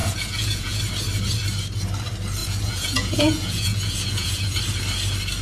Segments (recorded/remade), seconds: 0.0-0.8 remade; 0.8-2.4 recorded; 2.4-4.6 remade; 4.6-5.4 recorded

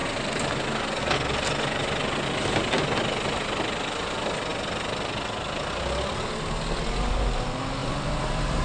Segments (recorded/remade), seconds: 0.0-8.6 recorded

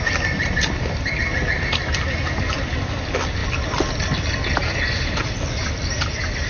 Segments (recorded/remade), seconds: 0.0-6.5 recorded

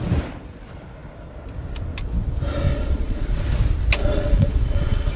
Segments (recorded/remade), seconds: 0.0-2.7 recorded; 2.7-3.4 remade; 3.4-4.0 recorded; 4.0-5.2 remade

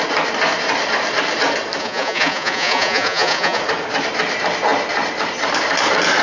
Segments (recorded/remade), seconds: 0.0-1.8 recorded; 1.8-3.6 remade; 3.6-6.2 recorded